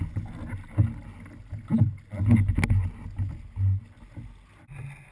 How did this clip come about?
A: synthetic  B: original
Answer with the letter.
B